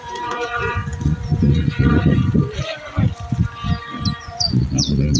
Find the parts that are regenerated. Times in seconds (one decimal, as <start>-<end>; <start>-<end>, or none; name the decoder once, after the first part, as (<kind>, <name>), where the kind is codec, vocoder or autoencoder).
0.0-2.4 (vocoder, Vocos); 4.2-5.2